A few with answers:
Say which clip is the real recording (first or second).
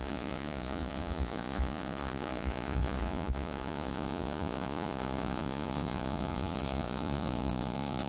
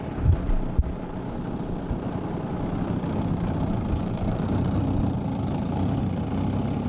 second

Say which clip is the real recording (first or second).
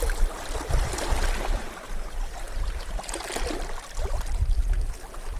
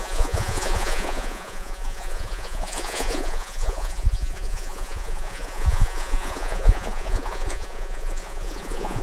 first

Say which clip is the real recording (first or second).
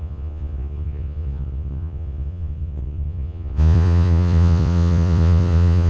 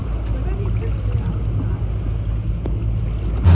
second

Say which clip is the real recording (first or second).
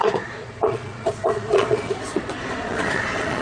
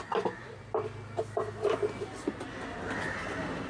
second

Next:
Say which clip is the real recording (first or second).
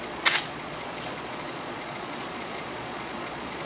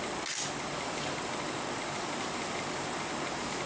second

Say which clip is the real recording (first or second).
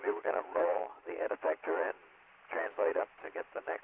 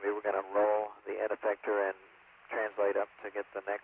second